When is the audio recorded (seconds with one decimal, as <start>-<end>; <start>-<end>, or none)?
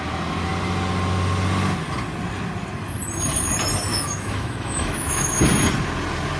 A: 0.0-3.9; 5.4-6.4